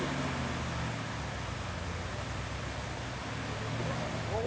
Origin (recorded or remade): recorded